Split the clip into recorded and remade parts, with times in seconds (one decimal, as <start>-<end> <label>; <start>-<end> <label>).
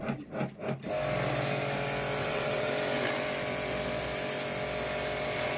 0.0-2.2 recorded; 2.2-2.7 remade; 2.7-5.6 recorded